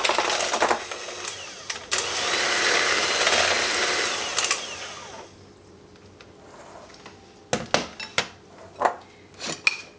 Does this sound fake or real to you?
real